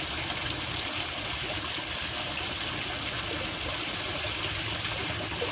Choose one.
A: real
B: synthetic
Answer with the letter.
A